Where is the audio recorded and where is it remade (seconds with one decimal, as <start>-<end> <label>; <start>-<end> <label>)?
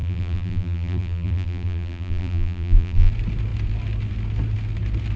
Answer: 0.0-3.1 remade; 3.1-5.2 recorded